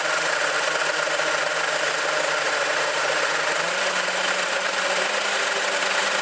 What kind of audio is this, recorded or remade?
recorded